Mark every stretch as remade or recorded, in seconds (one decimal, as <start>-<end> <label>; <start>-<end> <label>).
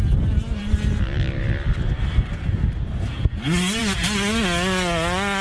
0.0-5.4 recorded